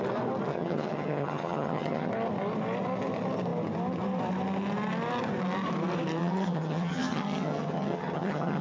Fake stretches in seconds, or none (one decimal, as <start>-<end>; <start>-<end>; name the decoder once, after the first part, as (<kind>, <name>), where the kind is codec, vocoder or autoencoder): 0.5-2.1 (vocoder, HiFi-GAN); 6.2-8.6